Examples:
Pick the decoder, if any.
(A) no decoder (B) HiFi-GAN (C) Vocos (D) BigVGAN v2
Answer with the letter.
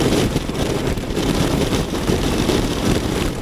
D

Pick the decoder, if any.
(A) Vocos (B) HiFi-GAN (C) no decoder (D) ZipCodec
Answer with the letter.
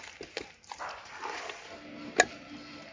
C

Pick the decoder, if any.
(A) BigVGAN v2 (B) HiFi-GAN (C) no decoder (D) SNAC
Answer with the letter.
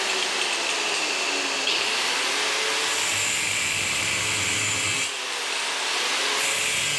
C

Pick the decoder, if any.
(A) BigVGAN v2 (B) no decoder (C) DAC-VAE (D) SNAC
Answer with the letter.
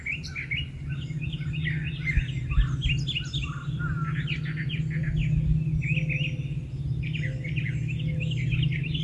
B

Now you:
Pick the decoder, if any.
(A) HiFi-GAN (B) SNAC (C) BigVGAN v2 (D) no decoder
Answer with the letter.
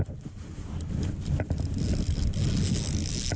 D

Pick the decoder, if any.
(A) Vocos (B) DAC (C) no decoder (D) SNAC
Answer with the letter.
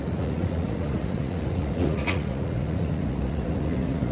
A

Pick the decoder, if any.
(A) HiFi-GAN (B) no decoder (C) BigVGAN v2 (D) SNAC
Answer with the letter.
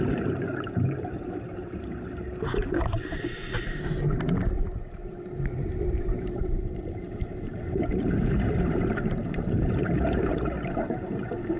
C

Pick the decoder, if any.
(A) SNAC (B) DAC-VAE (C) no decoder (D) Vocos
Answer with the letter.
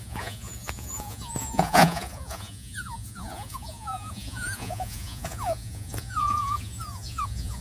D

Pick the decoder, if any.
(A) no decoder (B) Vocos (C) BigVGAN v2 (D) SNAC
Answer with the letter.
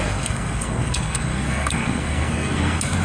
D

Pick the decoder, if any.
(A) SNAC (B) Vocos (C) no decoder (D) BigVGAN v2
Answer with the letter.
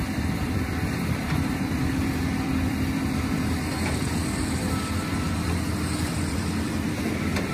D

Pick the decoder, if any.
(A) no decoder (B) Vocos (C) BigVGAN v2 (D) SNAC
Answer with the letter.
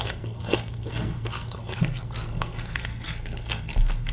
D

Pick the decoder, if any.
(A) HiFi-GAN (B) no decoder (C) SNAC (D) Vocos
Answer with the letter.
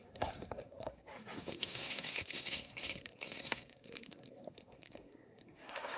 C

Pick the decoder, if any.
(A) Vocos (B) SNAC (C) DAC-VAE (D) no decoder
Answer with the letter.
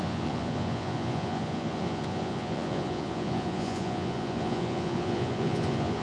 A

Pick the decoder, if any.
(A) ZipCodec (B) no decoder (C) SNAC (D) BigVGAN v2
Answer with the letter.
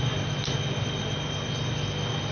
D